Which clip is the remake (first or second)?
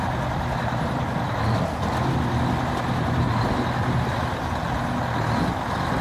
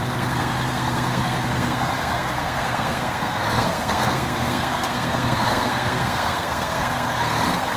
second